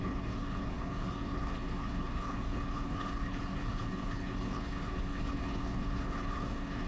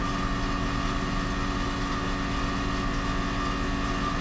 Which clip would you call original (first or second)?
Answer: second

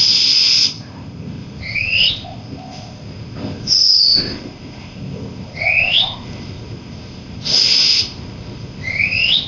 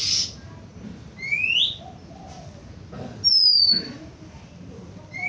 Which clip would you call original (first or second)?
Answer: second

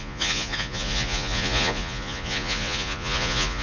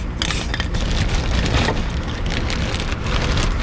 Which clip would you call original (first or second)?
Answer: second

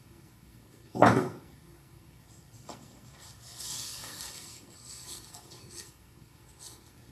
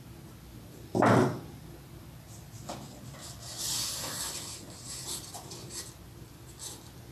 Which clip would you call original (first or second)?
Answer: second